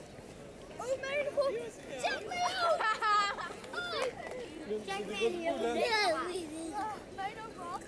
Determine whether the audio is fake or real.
real